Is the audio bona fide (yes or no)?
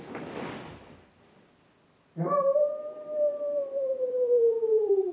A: no